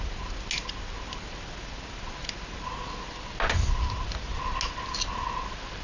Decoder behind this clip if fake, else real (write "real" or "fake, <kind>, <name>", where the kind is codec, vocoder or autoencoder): real